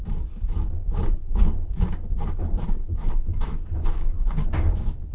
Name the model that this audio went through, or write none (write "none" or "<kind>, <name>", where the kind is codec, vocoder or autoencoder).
codec, DAC